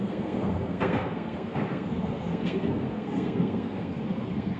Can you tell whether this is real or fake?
fake